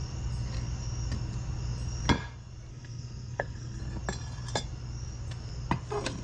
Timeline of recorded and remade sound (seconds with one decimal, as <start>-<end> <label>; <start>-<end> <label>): 0.0-2.7 recorded; 2.7-3.8 remade; 3.8-6.2 recorded